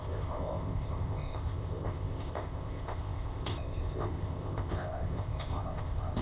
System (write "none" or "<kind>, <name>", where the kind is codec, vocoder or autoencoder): codec, ZipCodec